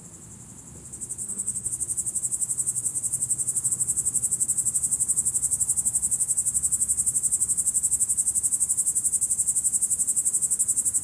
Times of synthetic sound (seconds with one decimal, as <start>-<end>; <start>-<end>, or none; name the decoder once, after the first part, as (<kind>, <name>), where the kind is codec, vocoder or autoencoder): 1.2-1.7 (codec, SNAC)